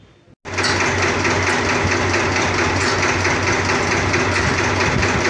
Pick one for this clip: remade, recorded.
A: recorded